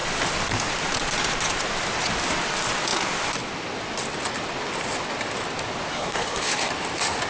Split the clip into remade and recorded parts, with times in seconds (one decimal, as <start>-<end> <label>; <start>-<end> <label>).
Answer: 0.0-5.9 recorded; 5.9-6.7 remade; 6.7-7.3 recorded